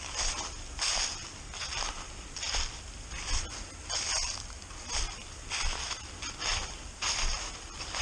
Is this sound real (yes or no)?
yes